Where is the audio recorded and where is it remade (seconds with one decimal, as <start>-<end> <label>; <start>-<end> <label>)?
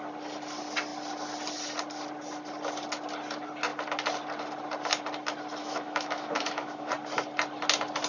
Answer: 0.0-5.6 recorded; 5.6-6.9 remade; 6.9-8.1 recorded